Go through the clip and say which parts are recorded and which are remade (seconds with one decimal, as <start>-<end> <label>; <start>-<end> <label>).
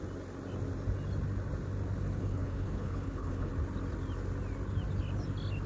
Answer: 0.0-2.2 recorded; 2.2-3.5 remade; 3.5-5.7 recorded